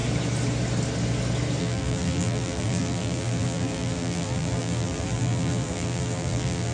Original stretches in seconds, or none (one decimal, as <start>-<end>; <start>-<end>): 0.0-1.6